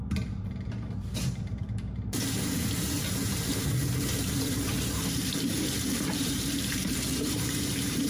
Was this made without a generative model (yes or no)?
no